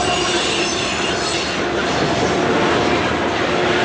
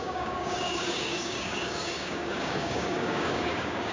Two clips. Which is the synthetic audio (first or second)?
second